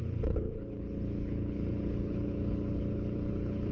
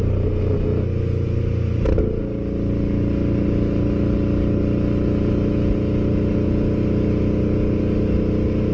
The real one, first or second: second